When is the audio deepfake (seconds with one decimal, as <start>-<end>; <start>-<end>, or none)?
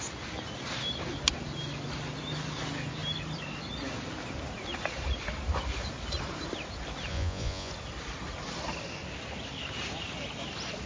7.1-7.7